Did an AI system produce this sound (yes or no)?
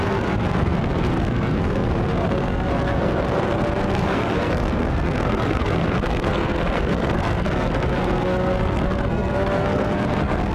yes